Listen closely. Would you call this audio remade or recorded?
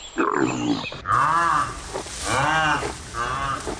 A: recorded